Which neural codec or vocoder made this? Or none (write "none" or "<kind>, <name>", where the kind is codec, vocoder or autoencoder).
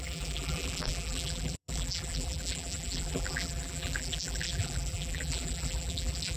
vocoder, BigVGAN v2